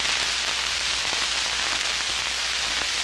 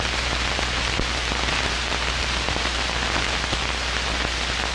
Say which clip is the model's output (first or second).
second